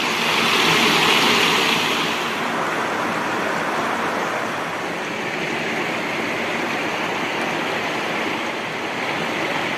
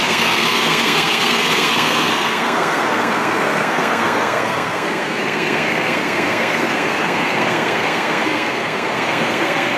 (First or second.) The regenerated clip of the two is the second